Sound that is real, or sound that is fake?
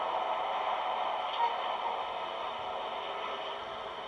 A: real